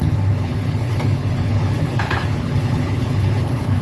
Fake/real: fake